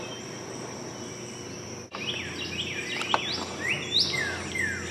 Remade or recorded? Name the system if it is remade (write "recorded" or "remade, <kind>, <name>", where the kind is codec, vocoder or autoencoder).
recorded